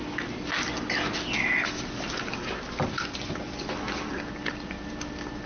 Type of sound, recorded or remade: recorded